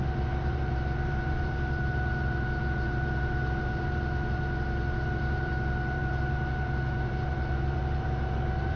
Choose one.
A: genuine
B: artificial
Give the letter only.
B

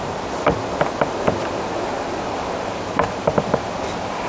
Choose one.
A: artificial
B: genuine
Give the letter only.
B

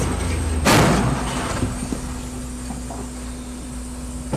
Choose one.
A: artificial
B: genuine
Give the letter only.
B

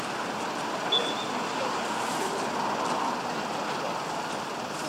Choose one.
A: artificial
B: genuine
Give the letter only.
B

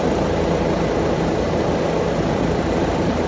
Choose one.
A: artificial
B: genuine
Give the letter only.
B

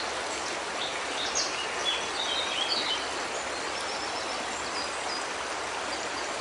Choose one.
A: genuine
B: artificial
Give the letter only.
A